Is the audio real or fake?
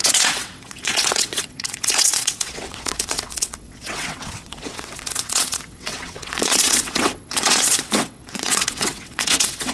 fake